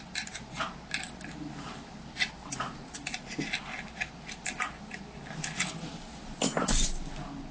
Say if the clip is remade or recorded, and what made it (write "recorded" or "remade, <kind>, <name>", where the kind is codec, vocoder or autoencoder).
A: recorded